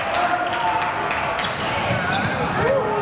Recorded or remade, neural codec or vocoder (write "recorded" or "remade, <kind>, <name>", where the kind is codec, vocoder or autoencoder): recorded